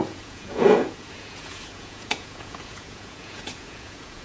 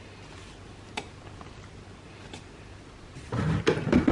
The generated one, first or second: first